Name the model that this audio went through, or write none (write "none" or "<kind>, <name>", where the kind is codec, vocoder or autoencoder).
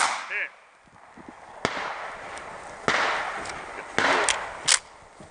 none